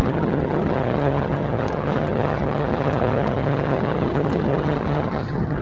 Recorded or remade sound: remade